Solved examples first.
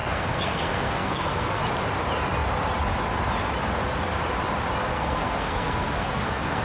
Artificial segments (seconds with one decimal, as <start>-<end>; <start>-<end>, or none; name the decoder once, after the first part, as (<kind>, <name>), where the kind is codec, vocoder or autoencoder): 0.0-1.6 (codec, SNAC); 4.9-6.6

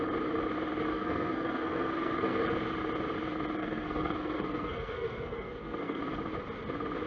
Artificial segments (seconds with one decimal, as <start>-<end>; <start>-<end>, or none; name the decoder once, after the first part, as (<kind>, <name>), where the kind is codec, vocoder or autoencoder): 0.9-2.5 (codec, SNAC); 3.6-6.0

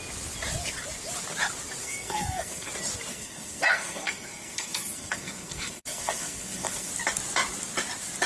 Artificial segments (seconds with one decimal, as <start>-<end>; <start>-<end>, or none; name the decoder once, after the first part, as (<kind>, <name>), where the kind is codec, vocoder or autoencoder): 1.8-2.7 (codec, SNAC); 3.1-6.9